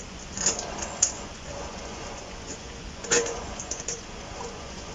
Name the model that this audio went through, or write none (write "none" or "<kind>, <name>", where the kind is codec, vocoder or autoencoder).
vocoder, Vocos